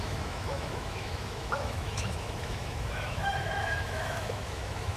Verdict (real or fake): fake